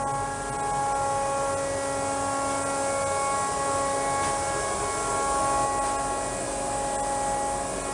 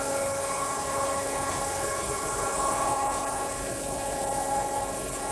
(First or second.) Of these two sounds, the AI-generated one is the second